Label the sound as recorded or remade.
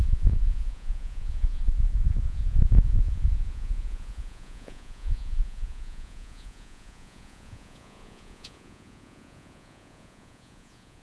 remade